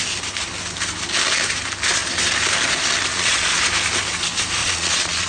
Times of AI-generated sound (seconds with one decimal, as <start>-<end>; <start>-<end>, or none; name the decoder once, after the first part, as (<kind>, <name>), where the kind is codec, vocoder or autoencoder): 3.1-3.6 (vocoder, Vocos); 4.6-5.3